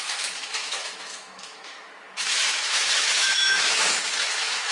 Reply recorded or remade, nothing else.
remade